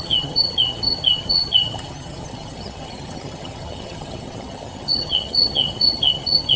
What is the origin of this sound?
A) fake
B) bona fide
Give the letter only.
A